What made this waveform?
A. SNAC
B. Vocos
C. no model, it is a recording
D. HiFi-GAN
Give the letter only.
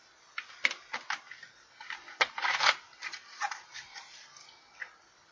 C